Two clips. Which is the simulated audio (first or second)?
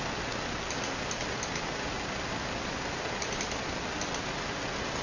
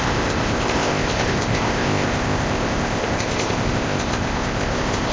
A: second